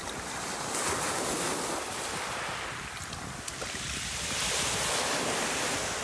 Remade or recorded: recorded